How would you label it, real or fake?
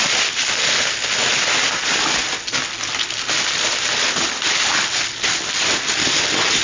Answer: real